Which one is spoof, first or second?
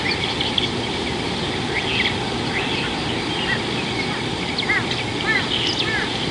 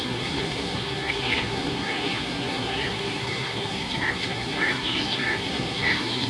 second